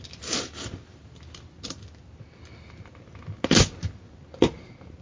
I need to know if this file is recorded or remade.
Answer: recorded